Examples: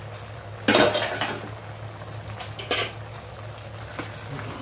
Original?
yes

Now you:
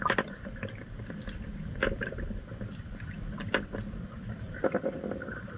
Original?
no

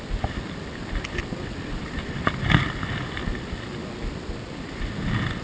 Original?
yes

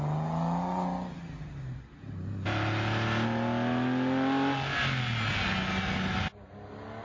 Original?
yes